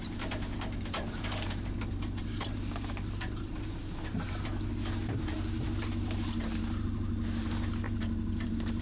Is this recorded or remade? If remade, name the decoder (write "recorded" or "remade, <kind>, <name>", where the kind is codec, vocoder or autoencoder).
remade, vocoder, BigVGAN v2